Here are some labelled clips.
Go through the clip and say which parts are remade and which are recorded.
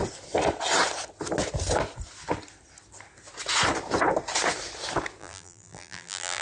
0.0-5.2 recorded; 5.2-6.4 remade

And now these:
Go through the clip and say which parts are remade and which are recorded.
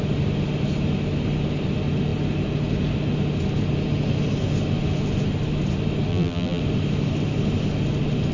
0.0-6.1 recorded; 6.1-6.6 remade; 6.6-8.3 recorded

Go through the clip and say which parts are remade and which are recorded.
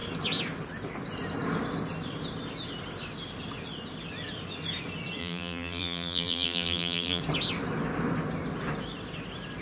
0.0-5.2 recorded; 5.2-7.2 remade; 7.2-9.6 recorded